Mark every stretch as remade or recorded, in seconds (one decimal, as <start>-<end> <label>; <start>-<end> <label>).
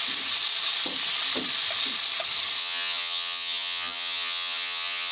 0.0-2.6 recorded; 2.6-5.1 remade